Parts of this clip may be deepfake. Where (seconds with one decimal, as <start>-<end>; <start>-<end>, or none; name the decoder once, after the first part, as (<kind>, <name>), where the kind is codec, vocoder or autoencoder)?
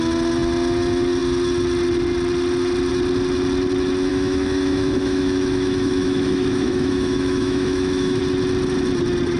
4.1-8.2 (autoencoder, DAC-VAE)